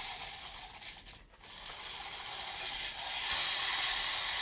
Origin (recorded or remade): recorded